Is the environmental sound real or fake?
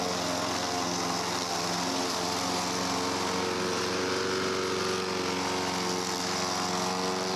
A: real